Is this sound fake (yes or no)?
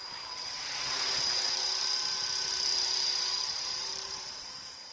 yes